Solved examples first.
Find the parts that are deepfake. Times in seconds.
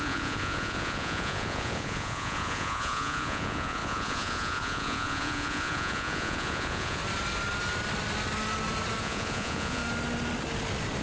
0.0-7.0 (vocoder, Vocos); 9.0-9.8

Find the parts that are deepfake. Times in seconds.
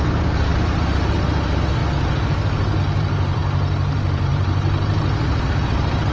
0.0-1.8 (vocoder, BigVGAN v2); 2.8-3.4; 3.9-6.1